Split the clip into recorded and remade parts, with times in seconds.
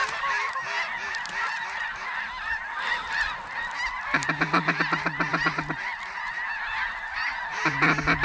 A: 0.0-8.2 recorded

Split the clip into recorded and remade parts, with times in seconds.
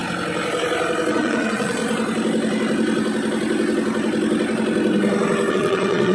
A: 0.0-1.1 recorded; 1.1-1.8 remade; 1.8-5.5 recorded; 5.5-6.1 remade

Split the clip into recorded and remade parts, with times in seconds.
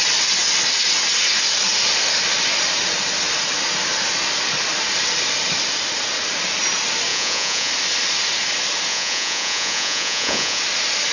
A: 0.0-7.1 recorded; 7.1-7.7 remade; 7.7-8.9 recorded; 8.9-10.6 remade; 10.6-11.1 recorded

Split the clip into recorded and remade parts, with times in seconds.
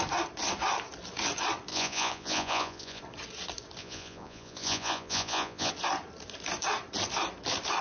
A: 0.0-1.7 recorded; 1.7-3.0 remade; 3.0-3.8 recorded; 3.8-5.7 remade; 5.7-7.8 recorded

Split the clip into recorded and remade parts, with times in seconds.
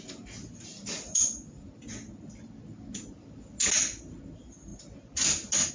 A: 0.0-5.7 recorded